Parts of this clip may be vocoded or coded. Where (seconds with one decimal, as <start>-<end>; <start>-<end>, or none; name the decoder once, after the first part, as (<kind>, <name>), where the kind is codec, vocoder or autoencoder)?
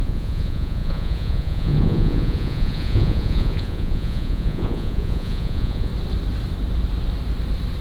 0.0-5.9 (vocoder, Vocos)